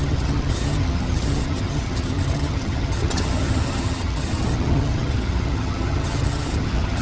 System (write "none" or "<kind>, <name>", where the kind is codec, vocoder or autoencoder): vocoder, HiFi-GAN